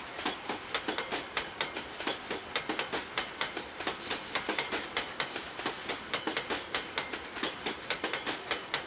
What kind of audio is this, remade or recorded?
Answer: recorded